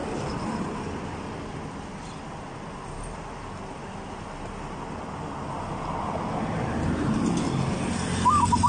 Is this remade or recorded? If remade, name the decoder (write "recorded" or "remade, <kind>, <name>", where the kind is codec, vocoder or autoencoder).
recorded